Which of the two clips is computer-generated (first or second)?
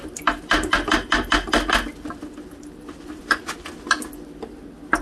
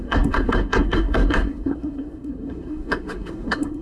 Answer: second